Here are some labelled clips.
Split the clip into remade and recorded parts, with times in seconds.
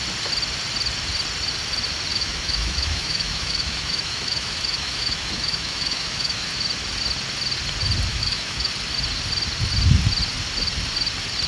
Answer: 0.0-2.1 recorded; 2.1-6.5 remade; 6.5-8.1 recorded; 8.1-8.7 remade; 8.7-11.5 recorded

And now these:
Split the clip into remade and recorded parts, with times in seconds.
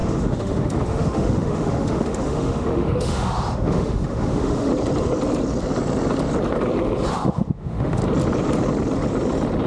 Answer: 0.0-4.7 remade; 4.7-7.1 recorded; 7.1-8.0 remade; 8.0-9.7 recorded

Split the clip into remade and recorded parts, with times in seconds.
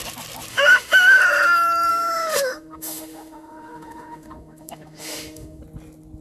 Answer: 0.0-0.5 recorded; 0.5-1.2 remade; 1.2-1.9 recorded; 1.9-5.6 remade; 5.6-6.2 recorded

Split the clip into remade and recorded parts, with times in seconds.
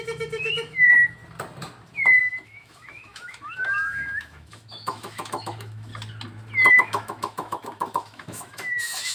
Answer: 0.0-1.2 remade; 1.2-2.2 recorded; 2.2-5.9 remade; 5.9-6.7 recorded; 6.7-9.1 remade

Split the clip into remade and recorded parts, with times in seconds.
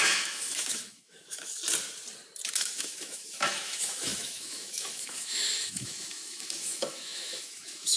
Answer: 0.0-1.6 remade; 1.6-2.5 recorded; 2.5-8.0 remade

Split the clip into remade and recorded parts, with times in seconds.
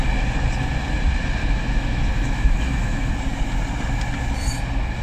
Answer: 0.0-1.4 recorded; 1.4-3.1 remade; 3.1-5.0 recorded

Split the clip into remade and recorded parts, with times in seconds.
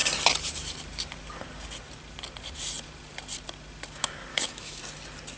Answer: 0.0-4.3 recorded; 4.3-4.8 remade; 4.8-5.4 recorded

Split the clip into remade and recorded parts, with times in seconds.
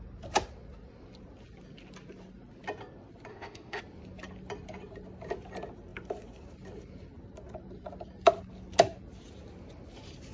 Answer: 0.0-3.3 recorded; 3.3-3.8 remade; 3.8-10.3 recorded